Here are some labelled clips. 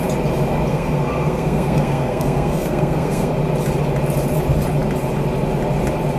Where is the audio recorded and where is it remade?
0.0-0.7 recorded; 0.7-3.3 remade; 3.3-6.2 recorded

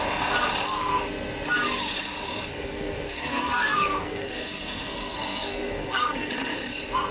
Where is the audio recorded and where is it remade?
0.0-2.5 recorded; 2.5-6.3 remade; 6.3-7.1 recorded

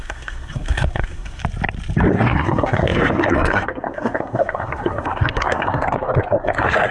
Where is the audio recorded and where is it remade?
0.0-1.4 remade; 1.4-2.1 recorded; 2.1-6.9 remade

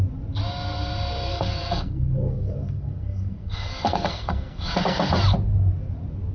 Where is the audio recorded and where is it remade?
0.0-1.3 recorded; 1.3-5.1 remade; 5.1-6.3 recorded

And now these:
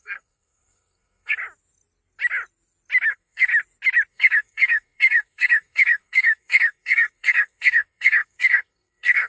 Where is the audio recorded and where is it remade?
0.0-1.4 remade; 1.4-3.1 recorded; 3.1-3.5 remade; 3.5-4.1 recorded; 4.1-9.3 remade

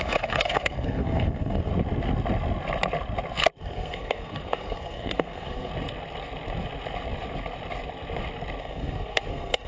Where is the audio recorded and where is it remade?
0.0-1.7 remade; 1.7-3.6 recorded; 3.6-5.7 remade; 5.7-8.6 recorded; 8.6-9.7 remade

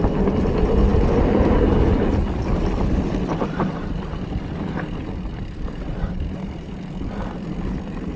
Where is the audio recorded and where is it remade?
0.0-8.2 recorded